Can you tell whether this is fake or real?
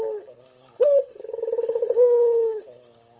fake